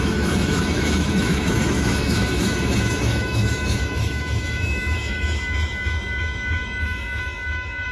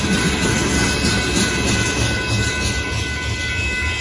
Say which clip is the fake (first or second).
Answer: first